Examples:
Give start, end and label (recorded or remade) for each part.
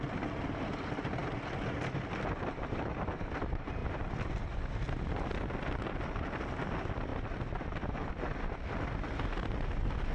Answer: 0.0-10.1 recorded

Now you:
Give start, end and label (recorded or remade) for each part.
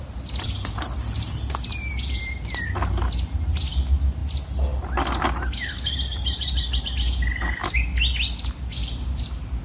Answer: 0.0-9.6 recorded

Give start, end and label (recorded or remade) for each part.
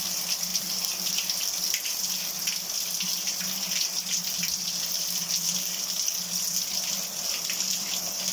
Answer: 0.0-8.3 recorded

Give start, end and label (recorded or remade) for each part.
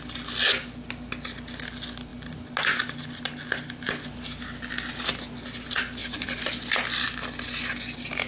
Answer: 0.0-8.3 recorded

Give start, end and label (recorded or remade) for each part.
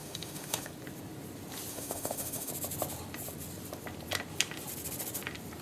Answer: 0.0-0.7 remade; 0.7-1.7 recorded; 1.7-2.5 remade; 2.5-5.6 recorded